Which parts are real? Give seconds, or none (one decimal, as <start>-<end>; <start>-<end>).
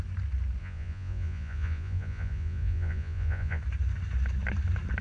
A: 0.0-0.6; 3.6-5.0